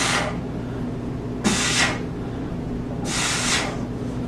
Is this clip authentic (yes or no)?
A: yes